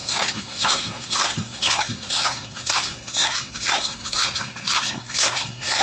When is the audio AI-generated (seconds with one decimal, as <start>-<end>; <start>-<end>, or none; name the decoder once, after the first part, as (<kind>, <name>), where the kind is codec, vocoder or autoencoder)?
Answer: 0.0-5.8 (codec, SNAC)